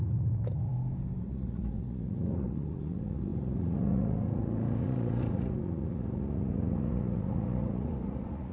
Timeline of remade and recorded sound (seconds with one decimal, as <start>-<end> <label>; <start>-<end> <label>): 0.0-0.7 remade; 0.7-1.2 recorded; 1.2-8.5 remade